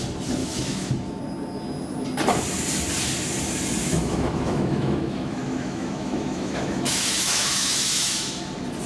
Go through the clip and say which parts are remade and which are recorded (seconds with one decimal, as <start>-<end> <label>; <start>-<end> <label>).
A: 0.0-0.4 recorded; 0.4-1.2 remade; 1.2-3.8 recorded; 3.8-8.4 remade; 8.4-8.9 recorded

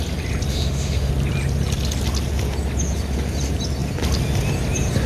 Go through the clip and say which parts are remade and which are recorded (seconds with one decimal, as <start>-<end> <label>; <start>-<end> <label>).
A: 0.0-0.5 recorded; 0.5-1.1 remade; 1.1-5.1 recorded

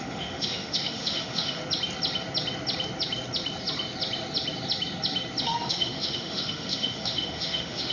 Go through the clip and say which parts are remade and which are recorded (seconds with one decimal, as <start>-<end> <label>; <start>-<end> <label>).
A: 0.0-1.6 remade; 1.6-5.4 recorded; 5.4-7.9 remade

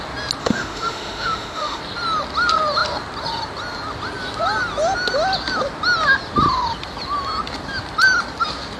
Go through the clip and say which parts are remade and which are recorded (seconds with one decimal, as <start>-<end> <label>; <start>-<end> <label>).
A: 0.0-0.4 recorded; 0.4-1.8 remade; 1.8-8.8 recorded

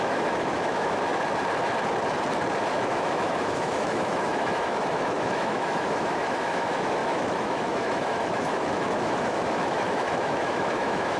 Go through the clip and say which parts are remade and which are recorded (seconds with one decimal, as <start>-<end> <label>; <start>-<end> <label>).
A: 0.0-1.1 remade; 1.1-2.8 recorded; 2.8-11.2 remade

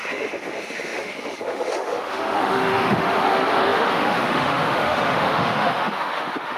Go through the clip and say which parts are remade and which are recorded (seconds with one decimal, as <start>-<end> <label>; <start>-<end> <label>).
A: 0.0-6.6 remade

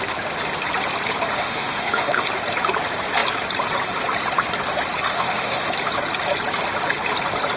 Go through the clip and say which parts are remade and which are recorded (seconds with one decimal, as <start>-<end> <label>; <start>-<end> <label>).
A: 0.0-1.3 recorded; 1.3-2.3 remade; 2.3-5.1 recorded; 5.1-5.7 remade; 5.7-7.6 recorded

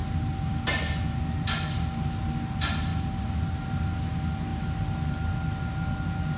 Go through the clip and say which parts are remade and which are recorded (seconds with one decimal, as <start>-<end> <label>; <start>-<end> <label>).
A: 0.0-6.4 recorded